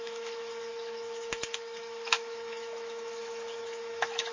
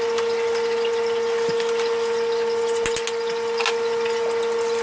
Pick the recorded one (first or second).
second